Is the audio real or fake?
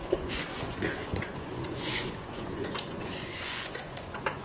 fake